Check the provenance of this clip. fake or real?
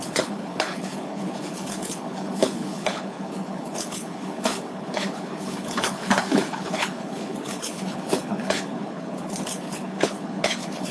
fake